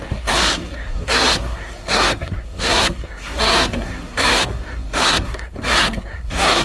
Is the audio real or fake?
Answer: fake